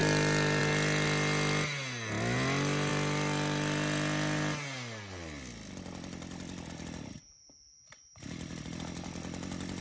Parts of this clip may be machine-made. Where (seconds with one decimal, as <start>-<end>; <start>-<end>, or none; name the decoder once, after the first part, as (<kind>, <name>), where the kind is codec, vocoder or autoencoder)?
none